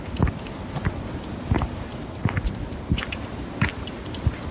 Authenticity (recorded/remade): recorded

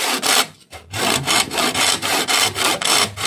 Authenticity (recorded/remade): recorded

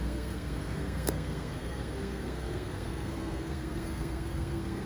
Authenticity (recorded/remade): remade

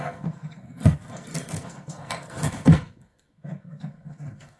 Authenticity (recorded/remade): remade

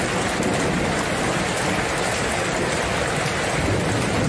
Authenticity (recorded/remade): recorded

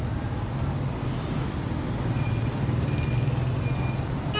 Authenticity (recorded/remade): recorded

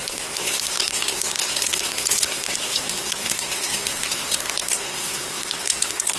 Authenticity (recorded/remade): remade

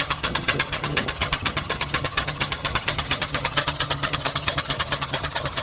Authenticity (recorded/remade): remade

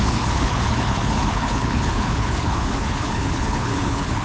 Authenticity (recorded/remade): remade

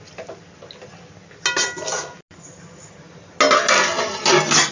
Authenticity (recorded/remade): recorded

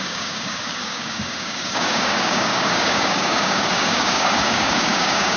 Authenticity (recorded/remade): remade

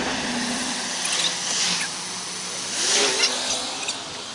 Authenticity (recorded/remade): recorded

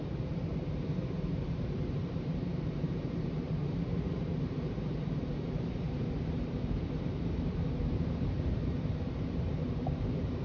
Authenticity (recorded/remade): remade